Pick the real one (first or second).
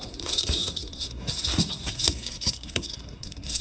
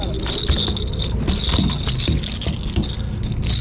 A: second